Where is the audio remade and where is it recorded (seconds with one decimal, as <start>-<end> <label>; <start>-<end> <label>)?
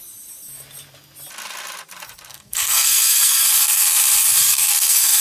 0.0-2.3 recorded; 2.3-4.0 remade; 4.0-4.5 recorded; 4.5-5.2 remade